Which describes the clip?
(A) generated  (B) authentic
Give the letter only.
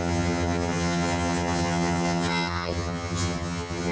A